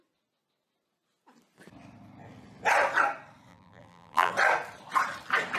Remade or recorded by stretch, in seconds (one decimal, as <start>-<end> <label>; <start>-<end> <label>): 0.0-3.5 recorded; 3.5-4.3 remade; 4.3-5.6 recorded